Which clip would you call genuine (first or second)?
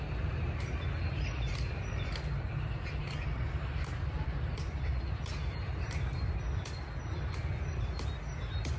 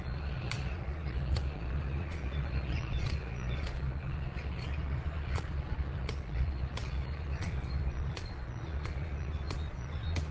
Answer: first